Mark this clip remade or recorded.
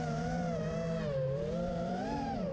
remade